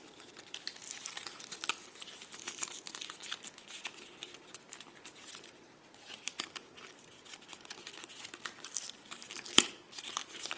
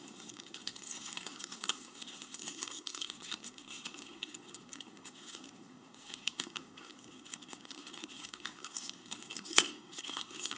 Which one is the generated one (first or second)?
second